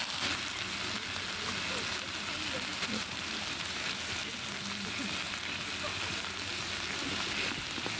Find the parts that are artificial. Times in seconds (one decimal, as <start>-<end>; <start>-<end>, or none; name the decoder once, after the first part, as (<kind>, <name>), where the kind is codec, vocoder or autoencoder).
none